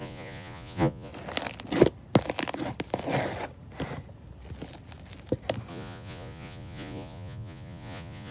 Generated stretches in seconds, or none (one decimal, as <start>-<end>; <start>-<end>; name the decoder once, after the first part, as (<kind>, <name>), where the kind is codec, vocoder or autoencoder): 0.0-1.1 (vocoder, Vocos); 5.7-8.3